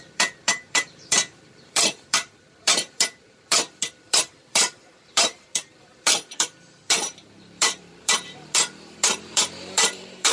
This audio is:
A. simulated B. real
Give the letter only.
A